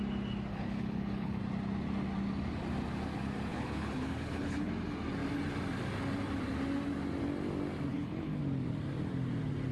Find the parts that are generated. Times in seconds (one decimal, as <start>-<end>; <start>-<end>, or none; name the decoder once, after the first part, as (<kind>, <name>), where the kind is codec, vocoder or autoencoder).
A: 0.5-1.4 (codec, HILCodec); 3.5-4.7; 7.9-8.4

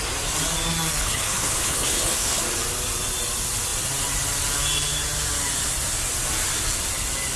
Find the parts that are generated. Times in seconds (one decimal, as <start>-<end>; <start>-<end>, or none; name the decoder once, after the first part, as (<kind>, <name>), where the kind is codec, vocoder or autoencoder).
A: 1.0-2.4 (codec, HILCodec)

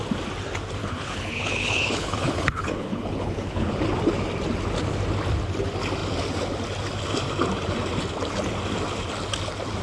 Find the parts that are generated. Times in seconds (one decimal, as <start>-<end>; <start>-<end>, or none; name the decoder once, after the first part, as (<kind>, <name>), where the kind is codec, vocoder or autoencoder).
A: 0.8-3.8 (codec, HILCodec)